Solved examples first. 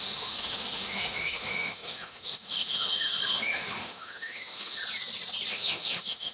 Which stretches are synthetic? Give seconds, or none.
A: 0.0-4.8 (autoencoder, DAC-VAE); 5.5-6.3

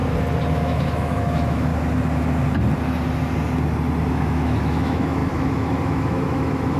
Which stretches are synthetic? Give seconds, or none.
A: 0.5-1.7 (autoencoder, DAC-VAE); 4.1-6.8

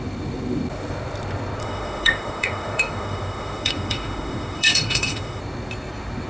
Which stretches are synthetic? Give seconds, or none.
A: 1.6-5.4 (autoencoder, DAC-VAE)

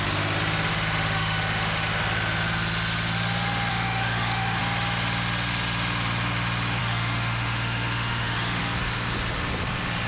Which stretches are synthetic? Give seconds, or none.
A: 0.7-2.0 (autoencoder, DAC-VAE); 3.7-4.6; 6.8-8.6

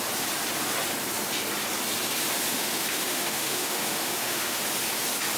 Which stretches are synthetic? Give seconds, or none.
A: 2.5-4.6 (autoencoder, DAC-VAE)

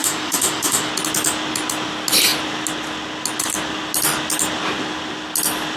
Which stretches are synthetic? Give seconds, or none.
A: 0.0-0.9 (autoencoder, DAC-VAE)

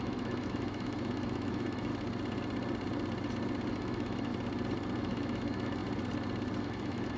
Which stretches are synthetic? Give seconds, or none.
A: 0.0-1.9 (autoencoder, DAC-VAE); 3.7-4.3; 5.0-5.8; 6.6-7.2